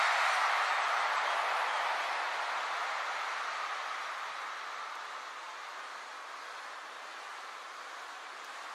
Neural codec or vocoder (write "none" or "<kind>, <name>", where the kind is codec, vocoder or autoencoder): none